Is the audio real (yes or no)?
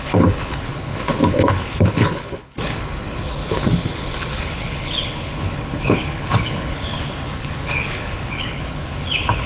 no